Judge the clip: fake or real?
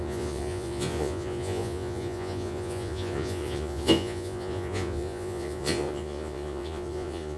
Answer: fake